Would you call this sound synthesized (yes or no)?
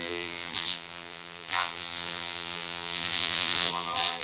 yes